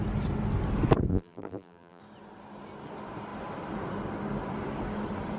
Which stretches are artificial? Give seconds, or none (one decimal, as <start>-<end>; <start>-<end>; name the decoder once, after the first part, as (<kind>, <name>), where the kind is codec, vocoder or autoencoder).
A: 1.1-2.0 (vocoder, BigVGAN v2)